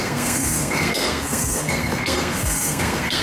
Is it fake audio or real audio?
fake